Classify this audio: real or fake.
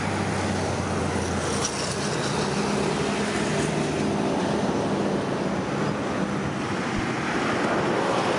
real